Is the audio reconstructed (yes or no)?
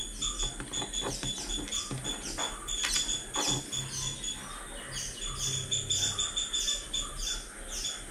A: no